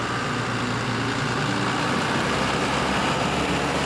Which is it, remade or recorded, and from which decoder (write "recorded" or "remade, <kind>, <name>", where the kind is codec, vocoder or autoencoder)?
recorded